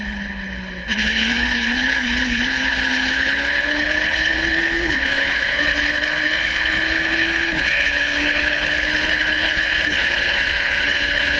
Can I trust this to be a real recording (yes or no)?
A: no